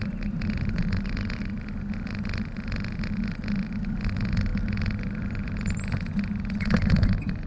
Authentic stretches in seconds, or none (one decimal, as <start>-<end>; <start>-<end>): 0.0-7.5